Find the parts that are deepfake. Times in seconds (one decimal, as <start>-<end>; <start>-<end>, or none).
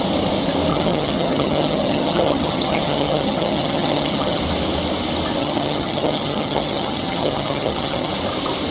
0.7-4.4; 5.4-8.1